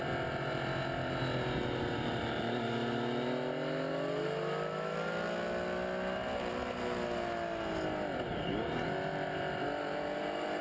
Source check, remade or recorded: recorded